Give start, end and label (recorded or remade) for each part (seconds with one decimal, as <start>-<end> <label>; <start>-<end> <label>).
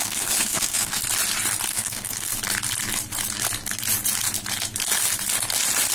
0.0-1.0 remade; 1.0-1.7 recorded; 1.7-2.3 remade; 2.3-5.9 recorded